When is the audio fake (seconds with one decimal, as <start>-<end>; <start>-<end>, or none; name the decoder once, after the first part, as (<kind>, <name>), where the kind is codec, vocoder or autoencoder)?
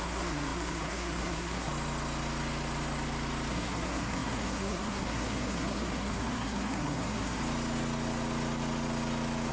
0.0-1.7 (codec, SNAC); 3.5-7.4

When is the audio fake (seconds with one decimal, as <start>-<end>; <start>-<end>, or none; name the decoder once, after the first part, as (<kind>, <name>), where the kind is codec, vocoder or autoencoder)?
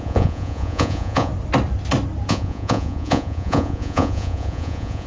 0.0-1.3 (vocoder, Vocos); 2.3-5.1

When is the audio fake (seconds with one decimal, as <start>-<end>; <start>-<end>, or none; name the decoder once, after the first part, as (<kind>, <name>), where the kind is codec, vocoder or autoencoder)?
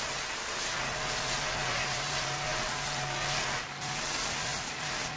none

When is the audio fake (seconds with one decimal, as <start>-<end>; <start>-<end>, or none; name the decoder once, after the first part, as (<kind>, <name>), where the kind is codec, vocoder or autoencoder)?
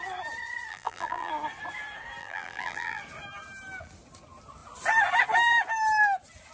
0.7-1.3 (vocoder, BigVGAN v2); 2.2-3.0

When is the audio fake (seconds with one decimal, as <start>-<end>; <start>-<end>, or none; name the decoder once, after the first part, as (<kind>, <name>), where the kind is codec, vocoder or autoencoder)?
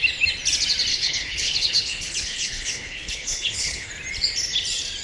0.9-3.9 (codec, HILCodec)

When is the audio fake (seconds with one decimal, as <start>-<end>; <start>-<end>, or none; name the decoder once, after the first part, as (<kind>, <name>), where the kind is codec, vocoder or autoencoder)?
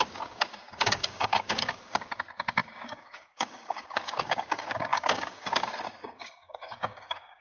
0.0-7.4 (codec, DAC)